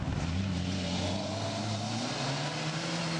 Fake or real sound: real